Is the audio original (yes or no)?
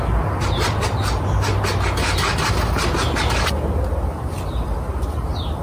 yes